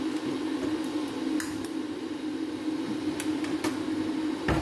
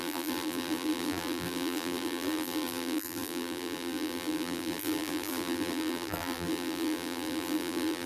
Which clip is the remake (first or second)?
second